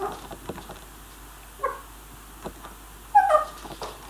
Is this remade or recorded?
recorded